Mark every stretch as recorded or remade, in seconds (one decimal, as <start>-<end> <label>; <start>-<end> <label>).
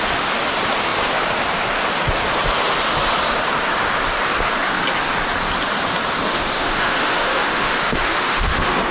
0.0-6.3 recorded; 6.3-8.9 remade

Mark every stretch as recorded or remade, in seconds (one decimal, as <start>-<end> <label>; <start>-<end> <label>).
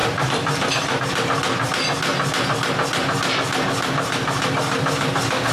0.0-1.0 remade; 1.0-5.5 recorded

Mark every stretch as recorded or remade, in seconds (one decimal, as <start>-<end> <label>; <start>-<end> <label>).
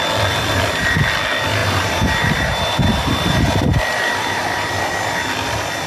0.0-1.6 recorded; 1.6-3.1 remade; 3.1-3.7 recorded; 3.7-4.4 remade; 4.4-5.9 recorded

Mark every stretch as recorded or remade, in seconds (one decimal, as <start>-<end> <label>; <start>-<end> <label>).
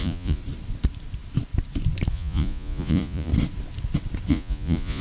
0.0-0.4 remade; 0.4-2.1 recorded; 2.1-3.3 remade; 3.3-4.3 recorded; 4.3-5.0 remade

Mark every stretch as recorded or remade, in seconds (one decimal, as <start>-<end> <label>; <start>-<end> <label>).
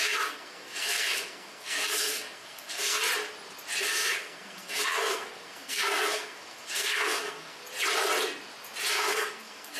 0.0-3.0 remade; 3.0-3.8 recorded; 3.8-7.6 remade; 7.6-8.9 recorded; 8.9-9.8 remade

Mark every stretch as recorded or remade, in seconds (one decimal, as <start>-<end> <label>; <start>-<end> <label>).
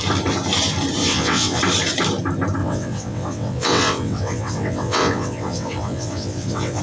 0.0-1.0 recorded; 1.0-1.6 remade; 1.6-2.6 recorded; 2.6-6.8 remade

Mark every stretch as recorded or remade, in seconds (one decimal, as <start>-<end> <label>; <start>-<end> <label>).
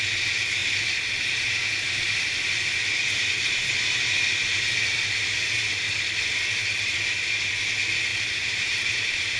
0.0-8.1 recorded; 8.1-9.4 remade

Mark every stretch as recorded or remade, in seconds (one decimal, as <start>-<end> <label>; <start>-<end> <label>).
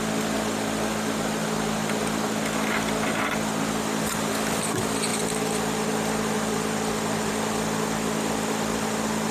0.0-9.3 recorded